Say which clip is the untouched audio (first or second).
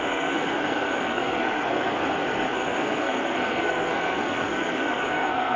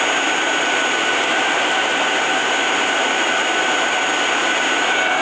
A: second